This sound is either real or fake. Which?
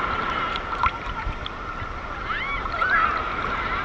real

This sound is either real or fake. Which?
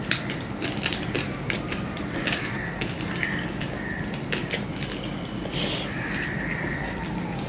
real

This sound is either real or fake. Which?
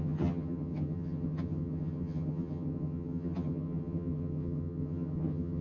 fake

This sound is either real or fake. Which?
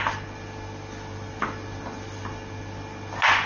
real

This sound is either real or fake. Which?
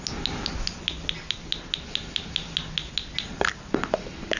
real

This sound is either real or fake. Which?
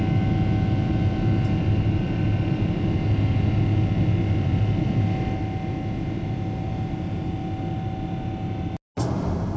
real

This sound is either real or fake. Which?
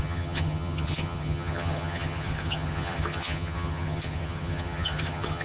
fake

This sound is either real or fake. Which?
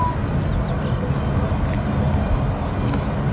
real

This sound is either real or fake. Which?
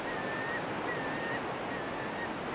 real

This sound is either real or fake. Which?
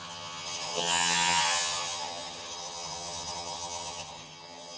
fake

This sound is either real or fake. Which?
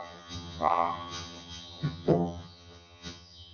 fake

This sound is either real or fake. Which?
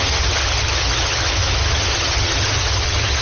fake